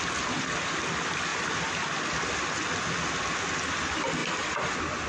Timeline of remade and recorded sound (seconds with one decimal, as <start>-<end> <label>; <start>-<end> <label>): 0.0-5.1 recorded